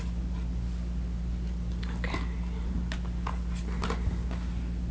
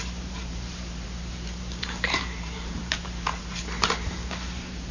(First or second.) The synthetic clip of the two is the second